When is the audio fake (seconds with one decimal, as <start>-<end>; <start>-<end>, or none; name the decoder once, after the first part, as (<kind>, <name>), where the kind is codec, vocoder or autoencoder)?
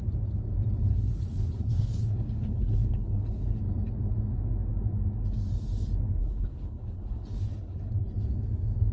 0.9-3.6 (codec, HILCodec); 6.2-7.9